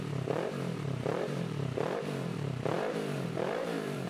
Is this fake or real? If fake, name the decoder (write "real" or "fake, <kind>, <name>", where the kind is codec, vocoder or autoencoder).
fake, vocoder, BigVGAN v2